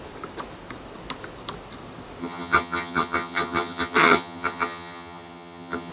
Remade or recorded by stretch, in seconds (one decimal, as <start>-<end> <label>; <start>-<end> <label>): 0.0-2.2 recorded; 2.2-5.9 remade